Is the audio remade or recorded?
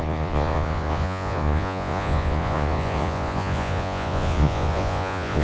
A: remade